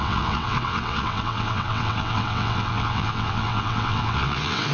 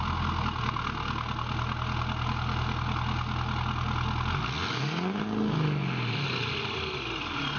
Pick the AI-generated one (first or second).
first